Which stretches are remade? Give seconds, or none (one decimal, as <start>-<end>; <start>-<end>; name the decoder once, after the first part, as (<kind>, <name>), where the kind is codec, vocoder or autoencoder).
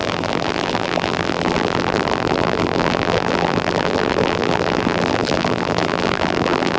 0.0-6.8 (vocoder, BigVGAN v2)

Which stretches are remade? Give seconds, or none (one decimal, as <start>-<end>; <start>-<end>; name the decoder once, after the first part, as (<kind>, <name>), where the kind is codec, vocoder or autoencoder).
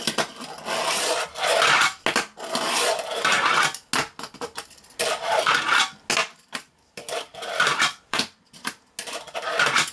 6.2-8.8 (vocoder, BigVGAN v2)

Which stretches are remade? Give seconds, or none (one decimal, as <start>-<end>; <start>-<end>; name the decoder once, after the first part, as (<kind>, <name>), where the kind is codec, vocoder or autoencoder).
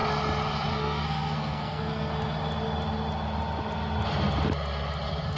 0.7-2.1 (codec, SNAC)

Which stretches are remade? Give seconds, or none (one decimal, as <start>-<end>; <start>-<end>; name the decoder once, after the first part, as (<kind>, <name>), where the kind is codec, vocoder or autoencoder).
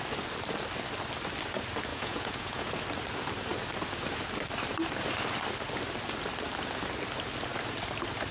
1.9-2.7 (vocoder, Vocos)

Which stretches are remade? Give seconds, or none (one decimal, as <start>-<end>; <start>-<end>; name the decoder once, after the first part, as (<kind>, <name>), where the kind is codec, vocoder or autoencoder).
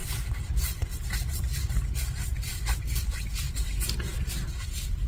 0.0-1.7 (vocoder, BigVGAN v2); 2.3-3.4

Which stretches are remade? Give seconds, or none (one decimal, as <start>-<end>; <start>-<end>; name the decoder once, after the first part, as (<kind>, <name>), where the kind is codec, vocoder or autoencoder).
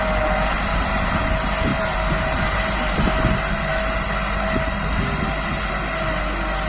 none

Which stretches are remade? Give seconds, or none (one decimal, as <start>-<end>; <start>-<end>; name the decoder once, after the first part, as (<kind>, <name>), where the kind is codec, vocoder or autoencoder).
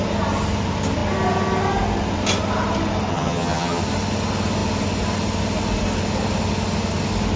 3.1-3.8 (vocoder, HiFi-GAN)